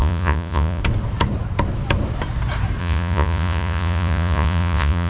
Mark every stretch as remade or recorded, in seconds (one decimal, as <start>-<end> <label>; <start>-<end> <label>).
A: 0.0-0.8 remade; 0.8-2.8 recorded; 2.8-5.1 remade